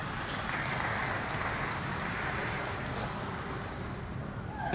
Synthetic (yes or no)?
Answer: no